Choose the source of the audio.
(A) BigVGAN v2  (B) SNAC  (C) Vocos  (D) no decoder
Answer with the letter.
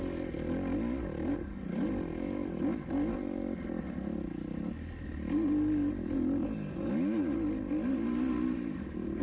D